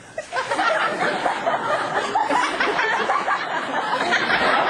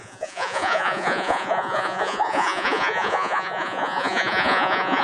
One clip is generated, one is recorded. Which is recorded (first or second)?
first